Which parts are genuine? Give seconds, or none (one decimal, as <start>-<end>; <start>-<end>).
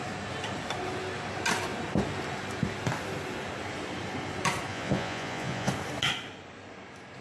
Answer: 0.0-4.7; 5.7-7.2